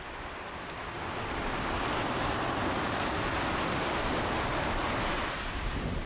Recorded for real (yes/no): yes